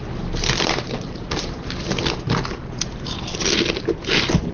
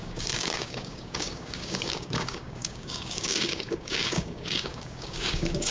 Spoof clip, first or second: second